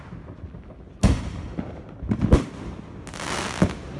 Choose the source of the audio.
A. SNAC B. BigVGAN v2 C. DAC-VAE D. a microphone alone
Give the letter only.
D